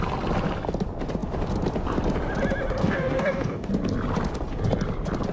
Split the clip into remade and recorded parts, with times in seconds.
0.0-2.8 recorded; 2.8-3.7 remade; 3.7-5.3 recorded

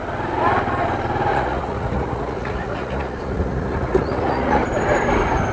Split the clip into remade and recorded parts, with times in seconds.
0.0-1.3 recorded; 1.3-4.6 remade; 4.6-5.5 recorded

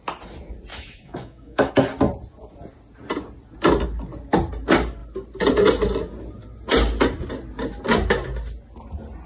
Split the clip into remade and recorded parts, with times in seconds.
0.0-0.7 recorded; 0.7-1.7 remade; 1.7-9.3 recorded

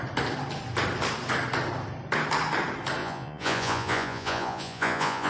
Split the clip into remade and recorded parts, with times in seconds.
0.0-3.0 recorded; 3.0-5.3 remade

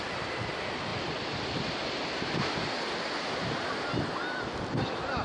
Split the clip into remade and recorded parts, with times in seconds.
0.0-5.2 recorded

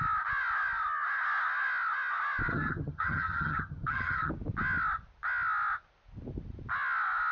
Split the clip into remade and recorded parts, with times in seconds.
0.0-2.5 recorded; 2.5-4.3 remade; 4.3-7.3 recorded

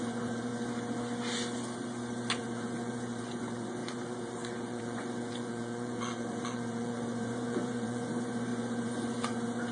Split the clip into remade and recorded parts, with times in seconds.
0.0-0.5 remade; 0.5-2.4 recorded; 2.4-9.7 remade